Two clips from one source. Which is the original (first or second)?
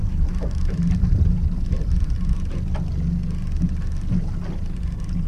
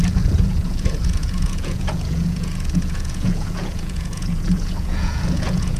first